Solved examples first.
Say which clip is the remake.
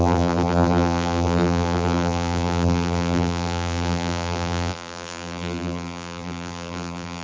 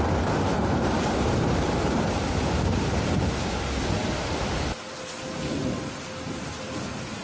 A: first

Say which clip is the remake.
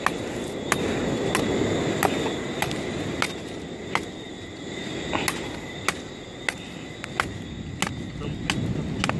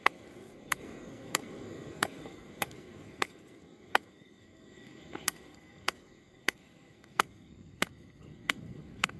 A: second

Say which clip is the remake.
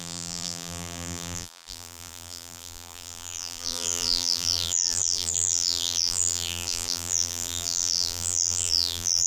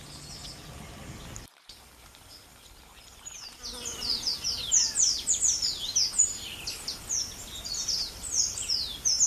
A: first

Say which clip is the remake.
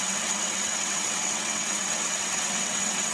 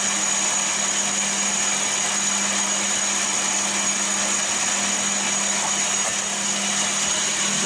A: first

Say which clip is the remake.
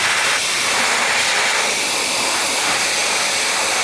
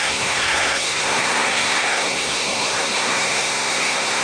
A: second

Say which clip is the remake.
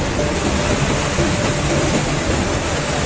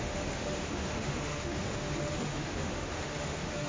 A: second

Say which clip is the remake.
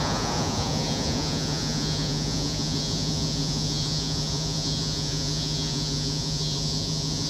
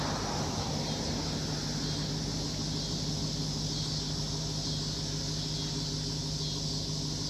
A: first